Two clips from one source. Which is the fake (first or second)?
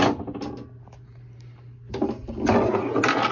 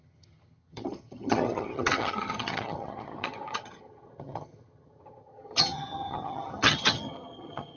second